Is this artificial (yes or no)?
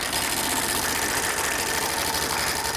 no